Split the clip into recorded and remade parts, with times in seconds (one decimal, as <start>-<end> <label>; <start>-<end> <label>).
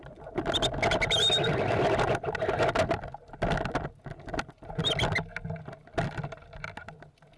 0.0-7.4 recorded